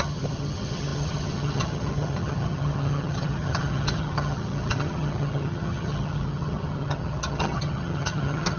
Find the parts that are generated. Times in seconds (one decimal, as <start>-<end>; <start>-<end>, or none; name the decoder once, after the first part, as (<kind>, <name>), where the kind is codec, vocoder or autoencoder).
0.0-8.6 (vocoder, HiFi-GAN)